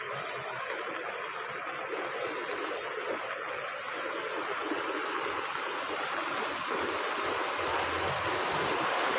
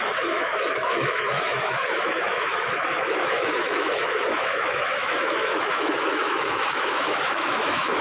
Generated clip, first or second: second